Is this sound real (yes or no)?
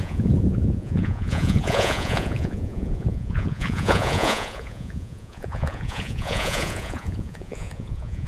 no